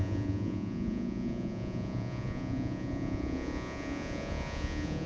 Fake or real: fake